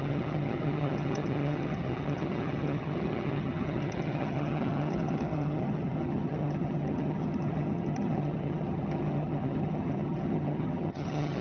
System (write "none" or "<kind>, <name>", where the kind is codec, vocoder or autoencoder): vocoder, HiFi-GAN